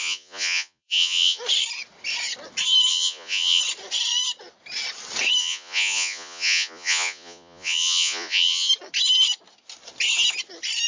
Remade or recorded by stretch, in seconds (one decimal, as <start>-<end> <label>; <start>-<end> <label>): 0.0-1.4 remade; 1.4-2.9 recorded; 2.9-3.6 remade; 3.6-5.4 recorded; 5.4-8.7 remade; 8.7-10.9 recorded